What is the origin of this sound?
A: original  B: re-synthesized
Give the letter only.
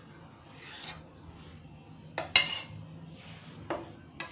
A